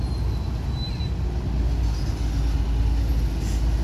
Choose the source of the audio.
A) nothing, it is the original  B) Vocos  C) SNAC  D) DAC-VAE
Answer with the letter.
A